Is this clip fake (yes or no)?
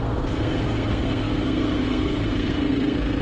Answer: yes